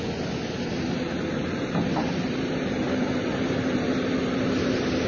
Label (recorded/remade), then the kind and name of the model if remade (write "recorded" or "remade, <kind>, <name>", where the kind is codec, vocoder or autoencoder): recorded